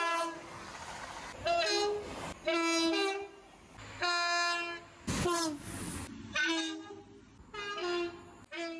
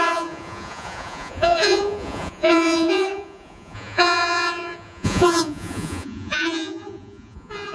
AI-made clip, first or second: second